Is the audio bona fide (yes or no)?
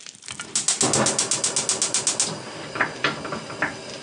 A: yes